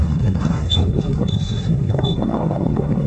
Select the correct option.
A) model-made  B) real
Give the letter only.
A